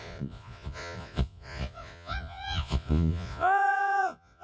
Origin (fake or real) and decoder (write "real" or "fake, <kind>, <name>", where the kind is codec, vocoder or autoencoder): fake, vocoder, Vocos